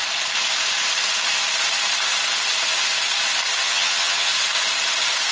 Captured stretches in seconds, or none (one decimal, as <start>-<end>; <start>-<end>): 0.0-3.6; 4.3-5.3